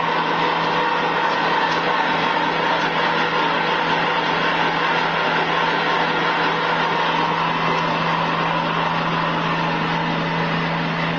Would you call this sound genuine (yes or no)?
yes